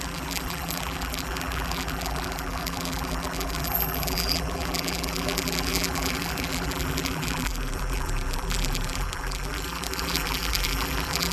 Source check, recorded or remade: remade